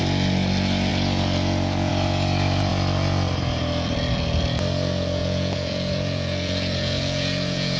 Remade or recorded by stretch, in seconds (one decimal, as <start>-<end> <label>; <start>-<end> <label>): 0.0-5.2 recorded; 5.2-7.8 remade